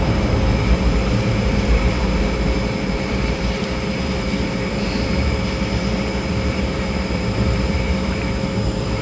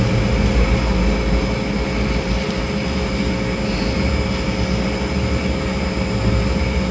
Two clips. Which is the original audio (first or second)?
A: second